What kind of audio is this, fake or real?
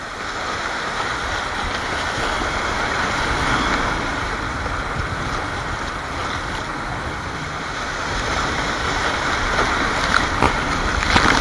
real